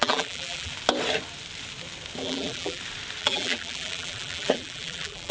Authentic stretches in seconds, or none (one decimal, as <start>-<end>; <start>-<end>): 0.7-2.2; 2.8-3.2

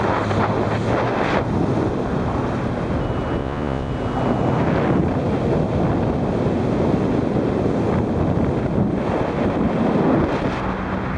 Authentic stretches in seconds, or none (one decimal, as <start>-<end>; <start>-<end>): 0.0-3.4; 3.9-11.2

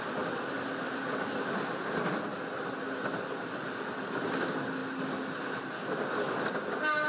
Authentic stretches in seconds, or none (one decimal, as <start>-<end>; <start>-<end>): 0.0-2.3; 2.8-7.1

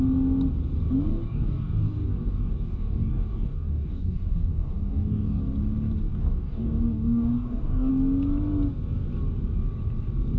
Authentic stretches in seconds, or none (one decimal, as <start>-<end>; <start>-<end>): 0.0-1.1; 5.4-6.1; 7.9-10.4